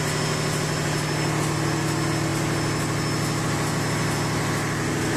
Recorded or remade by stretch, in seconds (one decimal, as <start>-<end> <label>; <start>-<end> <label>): 0.0-5.2 recorded